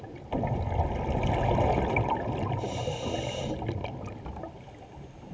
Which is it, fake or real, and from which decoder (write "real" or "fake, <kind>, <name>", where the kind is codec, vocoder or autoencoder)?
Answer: real